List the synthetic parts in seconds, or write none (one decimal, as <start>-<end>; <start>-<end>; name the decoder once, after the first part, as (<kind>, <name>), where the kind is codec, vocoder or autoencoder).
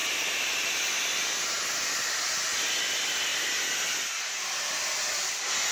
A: 0.0-2.1 (vocoder, BigVGAN v2)